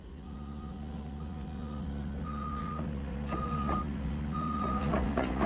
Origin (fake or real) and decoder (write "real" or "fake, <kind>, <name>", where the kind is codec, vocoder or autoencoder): fake, vocoder, Vocos